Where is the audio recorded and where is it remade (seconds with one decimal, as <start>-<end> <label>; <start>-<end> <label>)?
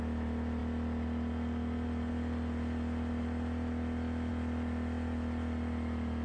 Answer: 0.0-6.2 recorded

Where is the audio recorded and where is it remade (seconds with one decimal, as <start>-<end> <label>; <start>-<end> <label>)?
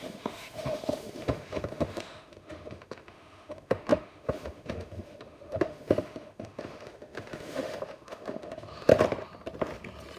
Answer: 0.0-8.9 remade; 8.9-10.2 recorded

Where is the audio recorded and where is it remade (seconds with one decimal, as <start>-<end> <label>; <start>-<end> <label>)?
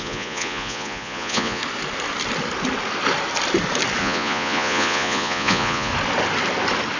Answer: 0.0-1.6 remade; 1.6-4.0 recorded; 4.0-5.9 remade; 5.9-7.0 recorded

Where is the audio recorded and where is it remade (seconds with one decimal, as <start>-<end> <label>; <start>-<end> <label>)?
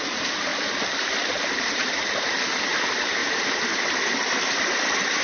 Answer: 0.0-5.2 recorded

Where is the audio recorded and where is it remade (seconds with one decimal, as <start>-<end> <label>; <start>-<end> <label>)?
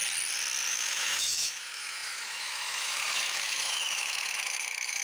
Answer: 0.0-0.7 recorded; 0.7-5.0 remade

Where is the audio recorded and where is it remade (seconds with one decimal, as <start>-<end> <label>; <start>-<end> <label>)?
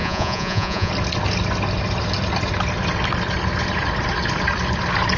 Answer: 0.0-0.9 remade; 0.9-5.2 recorded